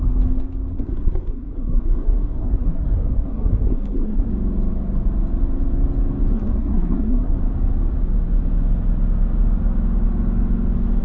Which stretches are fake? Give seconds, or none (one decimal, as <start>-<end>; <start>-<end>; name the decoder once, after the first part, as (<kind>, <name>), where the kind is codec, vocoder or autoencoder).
0.7-4.3 (codec, SNAC); 6.3-7.4